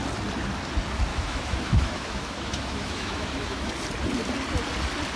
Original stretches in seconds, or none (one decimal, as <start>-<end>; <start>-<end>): 0.0-1.1; 3.7-5.2